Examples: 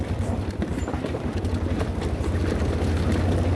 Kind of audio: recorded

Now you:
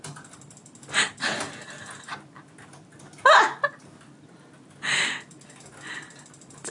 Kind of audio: recorded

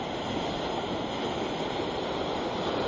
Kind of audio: recorded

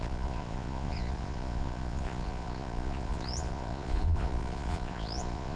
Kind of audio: remade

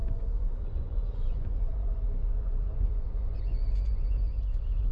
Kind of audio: remade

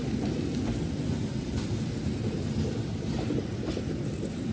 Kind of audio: recorded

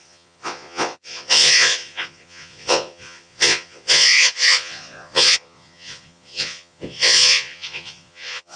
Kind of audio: remade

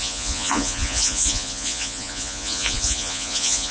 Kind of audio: remade